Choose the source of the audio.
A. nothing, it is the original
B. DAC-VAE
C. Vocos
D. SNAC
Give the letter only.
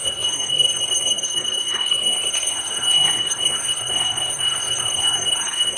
D